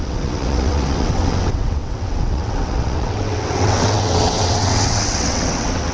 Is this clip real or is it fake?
fake